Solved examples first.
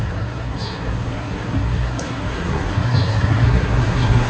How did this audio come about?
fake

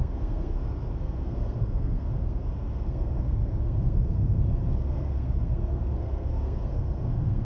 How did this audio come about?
fake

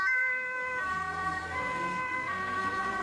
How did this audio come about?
fake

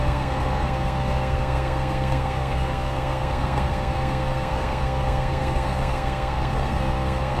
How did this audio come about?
fake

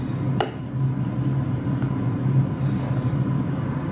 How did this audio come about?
real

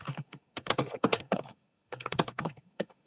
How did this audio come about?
fake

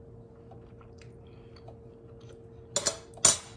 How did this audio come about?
real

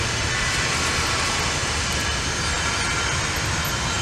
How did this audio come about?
real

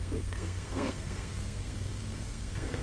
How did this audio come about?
fake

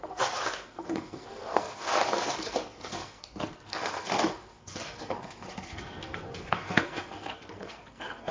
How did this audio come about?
fake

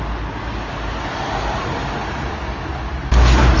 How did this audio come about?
real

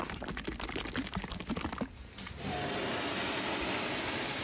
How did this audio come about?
real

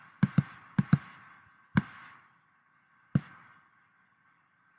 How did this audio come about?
real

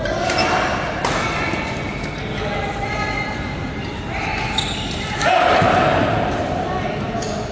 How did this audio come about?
real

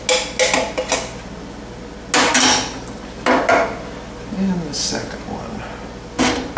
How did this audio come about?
real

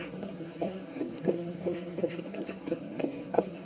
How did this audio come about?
fake